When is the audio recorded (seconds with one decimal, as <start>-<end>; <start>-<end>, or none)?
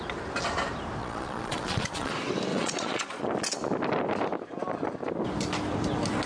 0.0-1.0; 2.1-2.5; 3.3-6.3